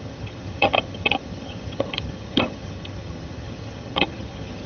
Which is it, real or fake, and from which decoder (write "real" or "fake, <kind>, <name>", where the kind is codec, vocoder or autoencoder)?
fake, vocoder, HiFi-GAN